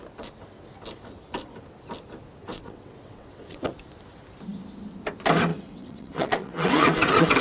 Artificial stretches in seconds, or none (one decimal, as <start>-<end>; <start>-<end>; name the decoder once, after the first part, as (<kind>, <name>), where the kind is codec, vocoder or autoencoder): 2.4-3.7 (vocoder, WaveNeXt); 5.5-7.4